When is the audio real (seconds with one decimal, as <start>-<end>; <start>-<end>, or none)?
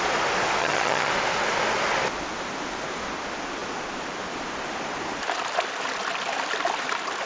0.0-0.6; 1.1-7.3